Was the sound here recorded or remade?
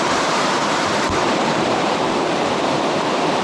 remade